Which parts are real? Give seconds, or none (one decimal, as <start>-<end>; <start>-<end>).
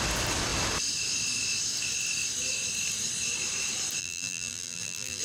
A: 0.0-4.0